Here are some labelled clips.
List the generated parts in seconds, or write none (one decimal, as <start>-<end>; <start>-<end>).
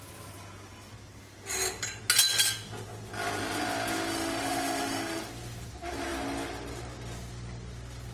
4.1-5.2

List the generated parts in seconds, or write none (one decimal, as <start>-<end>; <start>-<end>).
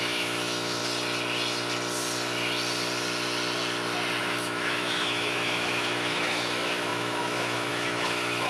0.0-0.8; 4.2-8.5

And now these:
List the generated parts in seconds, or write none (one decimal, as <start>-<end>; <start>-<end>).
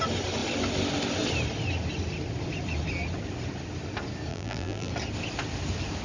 4.3-4.9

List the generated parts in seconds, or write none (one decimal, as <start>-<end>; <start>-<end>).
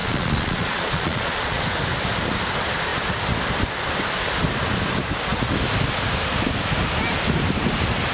0.0-1.6